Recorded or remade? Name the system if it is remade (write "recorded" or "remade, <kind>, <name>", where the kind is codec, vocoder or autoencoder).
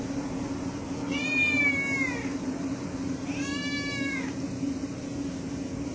recorded